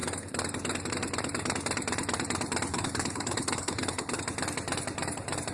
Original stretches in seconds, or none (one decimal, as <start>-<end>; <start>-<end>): 0.0-2.7; 4.2-5.5